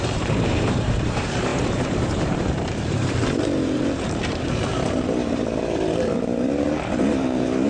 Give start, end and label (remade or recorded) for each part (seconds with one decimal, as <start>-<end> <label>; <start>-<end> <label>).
0.0-7.7 remade